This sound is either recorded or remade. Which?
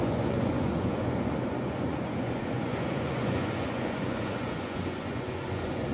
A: remade